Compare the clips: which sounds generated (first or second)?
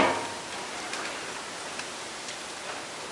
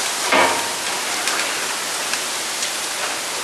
first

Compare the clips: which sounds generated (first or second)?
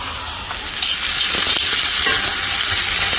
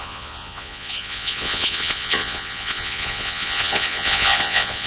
second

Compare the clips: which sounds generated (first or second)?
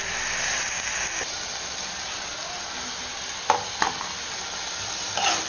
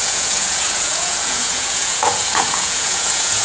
second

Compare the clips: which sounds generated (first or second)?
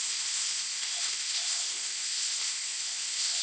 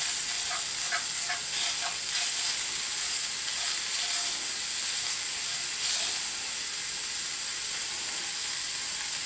first